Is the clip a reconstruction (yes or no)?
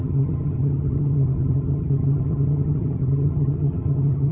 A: yes